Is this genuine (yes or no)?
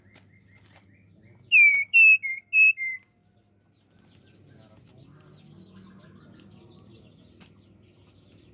yes